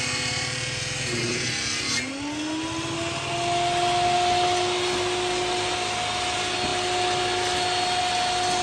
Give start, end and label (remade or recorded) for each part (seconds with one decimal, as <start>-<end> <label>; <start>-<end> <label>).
0.0-8.6 recorded